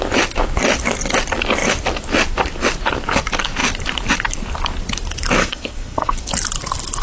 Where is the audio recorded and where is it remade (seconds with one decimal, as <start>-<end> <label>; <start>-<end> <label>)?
0.0-5.4 recorded; 5.4-6.3 remade; 6.3-7.0 recorded